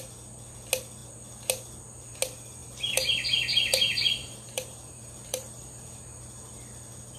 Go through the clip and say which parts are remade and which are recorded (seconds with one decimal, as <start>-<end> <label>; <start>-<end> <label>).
0.0-2.6 recorded; 2.6-6.0 remade; 6.0-7.2 recorded